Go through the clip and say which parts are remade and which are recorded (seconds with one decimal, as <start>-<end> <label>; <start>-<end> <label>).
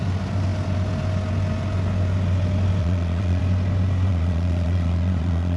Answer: 0.0-2.8 recorded; 2.8-3.4 remade; 3.4-4.1 recorded; 4.1-5.6 remade